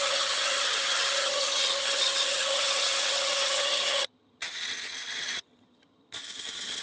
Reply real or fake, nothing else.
fake